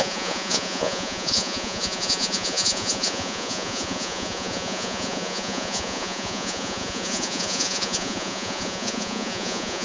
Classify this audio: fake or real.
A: fake